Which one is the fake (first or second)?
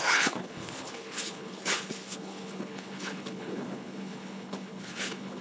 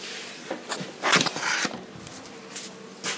first